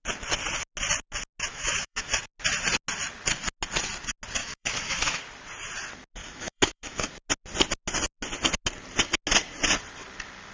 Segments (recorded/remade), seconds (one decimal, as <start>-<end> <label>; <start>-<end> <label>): 0.0-1.5 recorded; 1.5-2.1 remade; 2.1-4.4 recorded; 4.4-5.2 remade; 5.2-6.2 recorded; 6.2-7.1 remade; 7.1-10.5 recorded